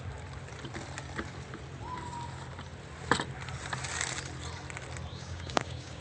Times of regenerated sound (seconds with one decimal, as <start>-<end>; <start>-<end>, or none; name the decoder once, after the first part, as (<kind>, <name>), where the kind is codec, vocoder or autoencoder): 5.1-6.0 (codec, DAC)